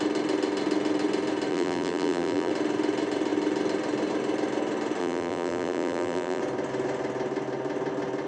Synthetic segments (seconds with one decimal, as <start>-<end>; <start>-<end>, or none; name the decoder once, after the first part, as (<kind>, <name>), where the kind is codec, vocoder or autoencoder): 1.5-2.5 (vocoder, BigVGAN v2); 5.0-6.4